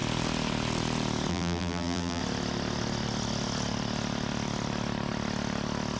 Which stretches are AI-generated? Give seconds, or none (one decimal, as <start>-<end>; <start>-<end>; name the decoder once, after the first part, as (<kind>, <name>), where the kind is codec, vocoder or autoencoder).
1.3-2.2 (vocoder, BigVGAN v2)